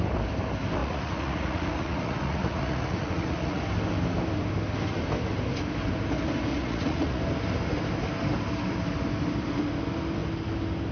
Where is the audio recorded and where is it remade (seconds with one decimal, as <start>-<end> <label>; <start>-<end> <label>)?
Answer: 0.0-0.8 recorded; 0.8-3.6 remade; 3.6-6.5 recorded; 6.5-7.2 remade; 7.2-10.9 recorded